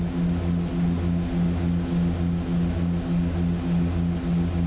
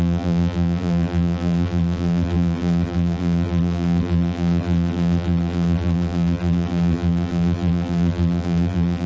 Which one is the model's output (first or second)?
second